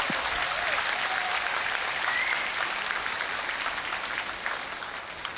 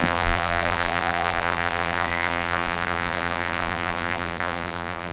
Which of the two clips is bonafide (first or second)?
first